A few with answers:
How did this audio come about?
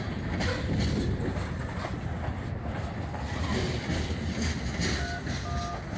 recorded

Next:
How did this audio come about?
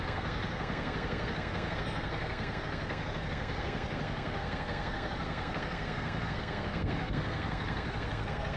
remade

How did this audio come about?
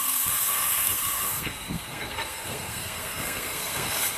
remade